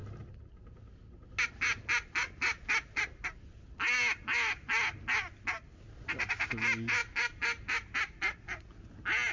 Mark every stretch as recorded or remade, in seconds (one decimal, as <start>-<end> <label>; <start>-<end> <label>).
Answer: 0.0-9.3 recorded

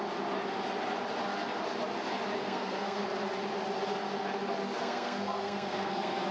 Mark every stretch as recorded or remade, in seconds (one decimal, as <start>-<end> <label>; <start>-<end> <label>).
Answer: 0.0-2.4 recorded; 2.4-3.0 remade; 3.0-4.6 recorded; 4.6-6.3 remade

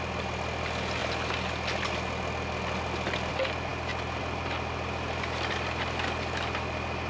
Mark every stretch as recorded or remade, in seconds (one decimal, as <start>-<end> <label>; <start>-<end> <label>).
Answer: 0.0-7.1 recorded

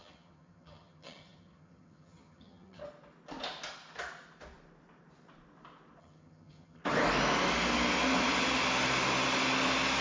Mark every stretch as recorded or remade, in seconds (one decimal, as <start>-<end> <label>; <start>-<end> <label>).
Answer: 0.0-2.8 remade; 2.8-6.0 recorded; 6.0-6.8 remade; 6.8-10.0 recorded

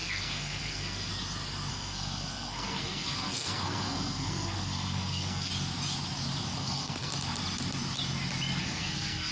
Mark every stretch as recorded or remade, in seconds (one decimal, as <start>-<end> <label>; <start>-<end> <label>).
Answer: 0.0-1.1 remade; 1.1-1.7 recorded; 1.7-5.5 remade; 5.5-6.6 recorded; 6.6-7.1 remade; 7.1-8.6 recorded; 8.6-9.3 remade

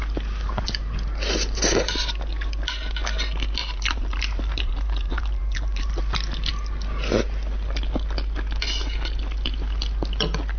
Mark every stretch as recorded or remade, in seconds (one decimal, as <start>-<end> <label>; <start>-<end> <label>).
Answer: 0.0-3.6 recorded; 3.6-6.0 remade; 6.0-10.6 recorded